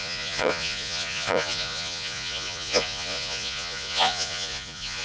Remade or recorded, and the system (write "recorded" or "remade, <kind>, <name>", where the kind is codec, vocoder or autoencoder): remade, vocoder, Vocos